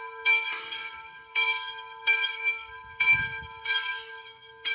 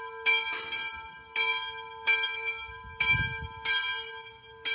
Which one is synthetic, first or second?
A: first